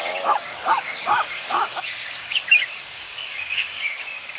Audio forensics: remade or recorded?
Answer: remade